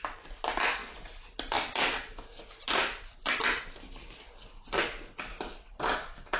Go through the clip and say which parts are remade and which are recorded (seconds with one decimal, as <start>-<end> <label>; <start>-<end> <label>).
0.0-6.4 recorded